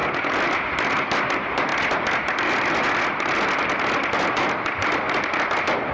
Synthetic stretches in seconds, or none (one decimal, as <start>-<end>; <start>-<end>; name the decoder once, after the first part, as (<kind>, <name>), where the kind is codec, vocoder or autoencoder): none